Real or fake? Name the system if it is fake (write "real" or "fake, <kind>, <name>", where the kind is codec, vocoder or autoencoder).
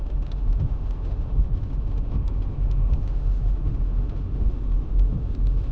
fake, autoencoder, DAC-VAE